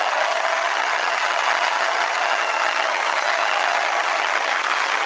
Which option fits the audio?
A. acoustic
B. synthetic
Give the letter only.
B